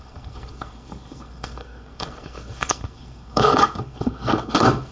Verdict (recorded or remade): remade